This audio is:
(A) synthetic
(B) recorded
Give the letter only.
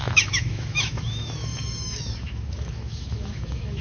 A